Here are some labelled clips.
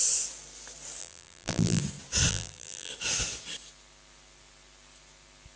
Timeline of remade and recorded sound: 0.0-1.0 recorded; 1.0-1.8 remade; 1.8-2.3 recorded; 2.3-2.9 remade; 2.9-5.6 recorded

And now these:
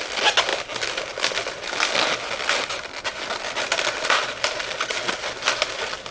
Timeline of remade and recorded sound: 0.0-6.1 recorded

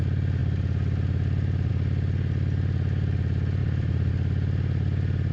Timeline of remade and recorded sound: 0.0-3.6 recorded; 3.6-4.1 remade; 4.1-5.3 recorded